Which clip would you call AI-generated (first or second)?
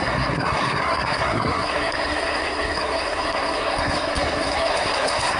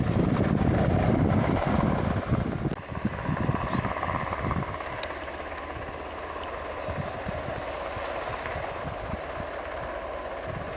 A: first